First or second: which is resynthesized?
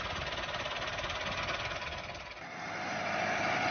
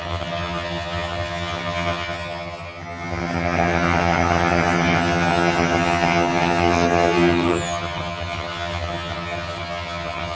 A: second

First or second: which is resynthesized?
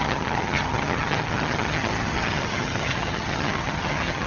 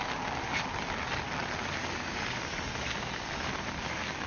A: first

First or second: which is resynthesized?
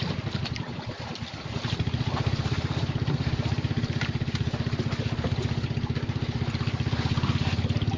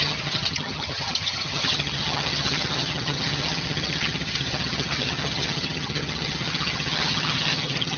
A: second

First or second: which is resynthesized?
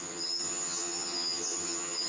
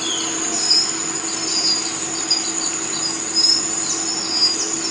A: first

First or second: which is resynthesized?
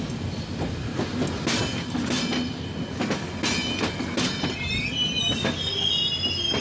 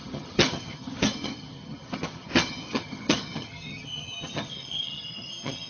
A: second